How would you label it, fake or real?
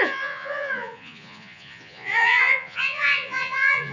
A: fake